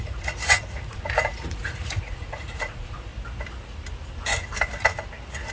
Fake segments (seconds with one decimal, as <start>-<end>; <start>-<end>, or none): 0.0-3.1